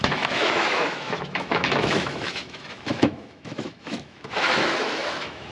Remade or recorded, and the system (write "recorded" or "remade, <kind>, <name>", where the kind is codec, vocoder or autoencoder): remade, autoencoder, DAC-VAE